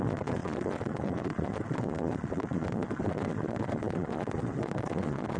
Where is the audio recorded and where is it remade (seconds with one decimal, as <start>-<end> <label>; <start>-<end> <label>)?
0.0-5.4 remade